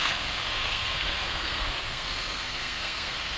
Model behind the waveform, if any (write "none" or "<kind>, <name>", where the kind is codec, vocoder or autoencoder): codec, SNAC